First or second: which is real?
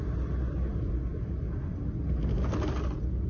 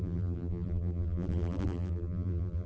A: first